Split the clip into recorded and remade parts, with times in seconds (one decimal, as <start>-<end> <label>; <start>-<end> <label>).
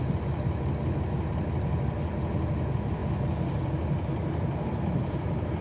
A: 0.0-5.6 recorded